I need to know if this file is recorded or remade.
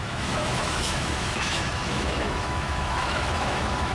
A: remade